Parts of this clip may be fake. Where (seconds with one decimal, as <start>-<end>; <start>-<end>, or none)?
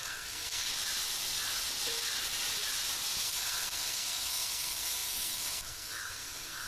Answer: 0.0-0.7; 3.2-6.7